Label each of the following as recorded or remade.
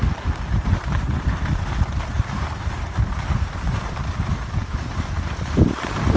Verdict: remade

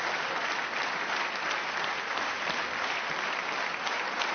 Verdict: remade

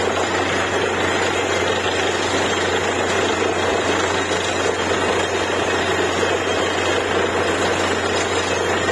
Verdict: recorded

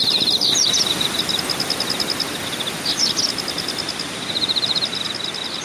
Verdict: recorded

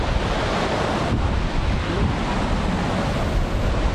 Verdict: recorded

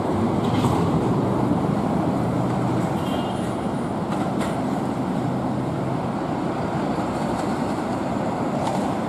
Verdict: remade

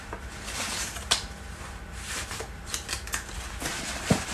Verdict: remade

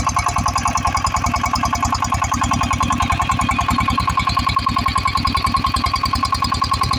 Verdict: recorded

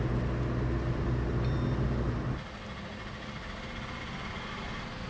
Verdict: recorded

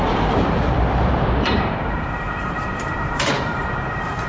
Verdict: remade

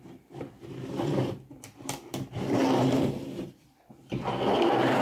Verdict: remade